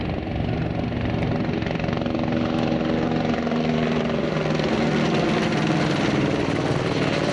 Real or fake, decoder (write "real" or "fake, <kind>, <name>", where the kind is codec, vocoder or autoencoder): real